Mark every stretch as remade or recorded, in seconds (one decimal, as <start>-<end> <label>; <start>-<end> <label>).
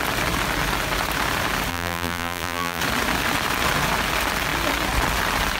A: 0.0-1.7 recorded; 1.7-2.8 remade; 2.8-5.6 recorded